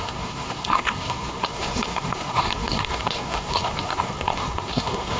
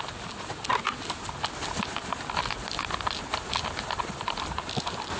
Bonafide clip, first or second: second